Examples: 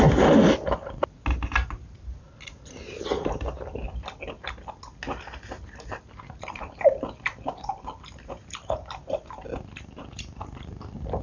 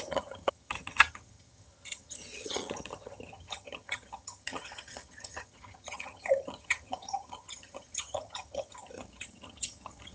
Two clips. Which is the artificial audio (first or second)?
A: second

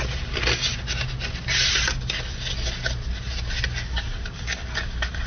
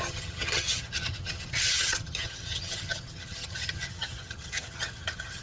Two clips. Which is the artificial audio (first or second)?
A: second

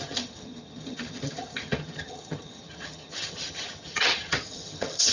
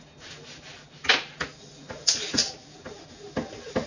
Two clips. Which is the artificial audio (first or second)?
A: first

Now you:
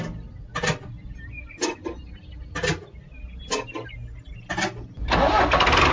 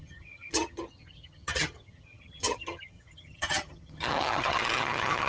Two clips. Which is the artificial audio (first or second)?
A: second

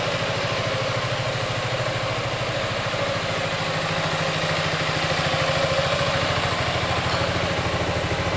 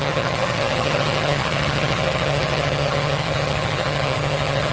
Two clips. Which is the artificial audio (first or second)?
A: second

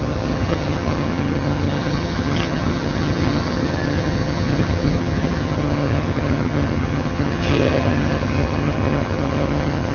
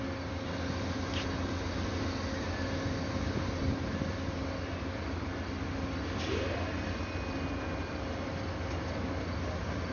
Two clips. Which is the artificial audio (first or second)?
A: first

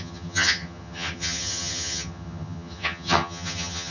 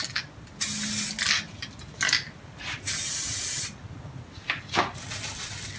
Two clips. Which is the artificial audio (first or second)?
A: first